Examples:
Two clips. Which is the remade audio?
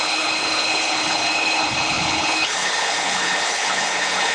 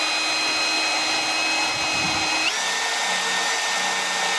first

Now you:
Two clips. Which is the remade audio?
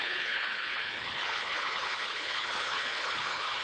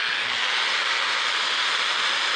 first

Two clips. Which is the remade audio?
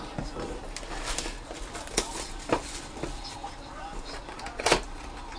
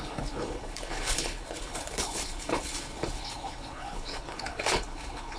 second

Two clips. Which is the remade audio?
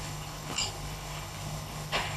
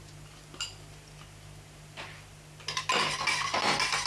first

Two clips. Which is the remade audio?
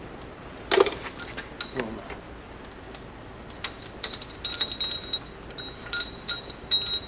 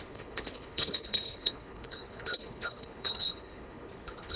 second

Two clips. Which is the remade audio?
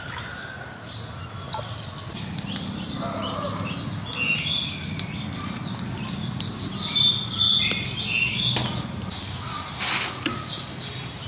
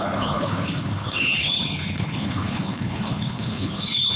second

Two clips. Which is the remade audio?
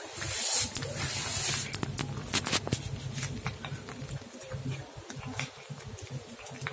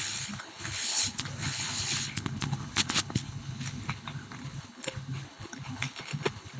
second